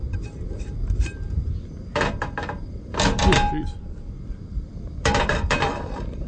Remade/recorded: remade